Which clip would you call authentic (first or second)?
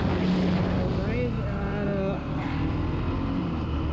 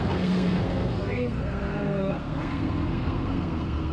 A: first